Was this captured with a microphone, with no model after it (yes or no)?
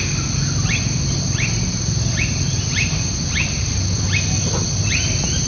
yes